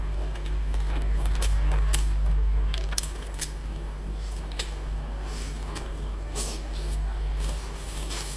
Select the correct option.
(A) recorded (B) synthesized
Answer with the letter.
B